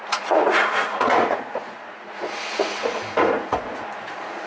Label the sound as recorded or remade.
remade